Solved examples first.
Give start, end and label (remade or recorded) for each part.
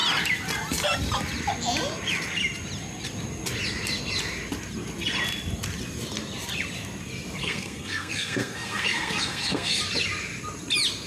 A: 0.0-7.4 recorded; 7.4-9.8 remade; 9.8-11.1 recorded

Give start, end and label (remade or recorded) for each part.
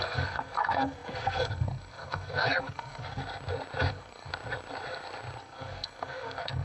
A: 0.0-3.2 remade; 3.2-3.9 recorded; 3.9-4.3 remade; 4.3-5.4 recorded; 5.4-6.6 remade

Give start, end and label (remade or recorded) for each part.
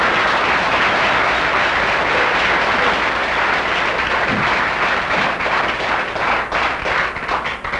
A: 0.0-7.8 recorded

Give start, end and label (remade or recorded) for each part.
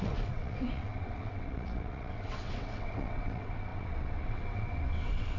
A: 0.0-5.4 remade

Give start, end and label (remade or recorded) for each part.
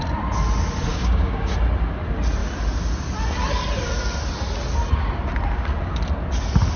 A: 0.0-0.9 recorded; 0.9-1.5 remade; 1.5-6.8 recorded